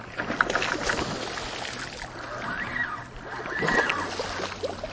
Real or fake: real